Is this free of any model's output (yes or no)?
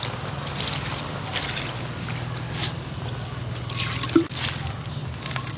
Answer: yes